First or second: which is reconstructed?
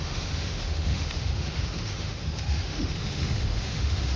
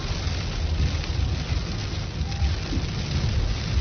first